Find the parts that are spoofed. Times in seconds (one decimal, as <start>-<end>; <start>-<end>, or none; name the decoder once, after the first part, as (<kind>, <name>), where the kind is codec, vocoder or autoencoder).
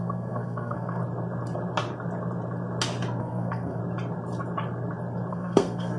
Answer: 0.0-1.0 (codec, SNAC); 3.2-3.8; 5.3-6.0